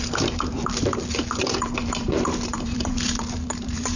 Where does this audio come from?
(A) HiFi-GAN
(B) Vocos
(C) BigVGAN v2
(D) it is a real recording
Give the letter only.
C